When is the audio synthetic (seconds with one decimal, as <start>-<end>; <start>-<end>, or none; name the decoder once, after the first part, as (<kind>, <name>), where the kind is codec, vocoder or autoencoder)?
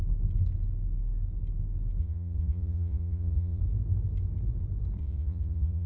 2.0-3.6 (vocoder, Vocos); 5.0-5.9